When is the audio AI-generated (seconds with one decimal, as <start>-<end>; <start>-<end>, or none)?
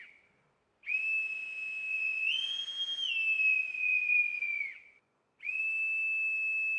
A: 1.9-2.5; 3.5-5.6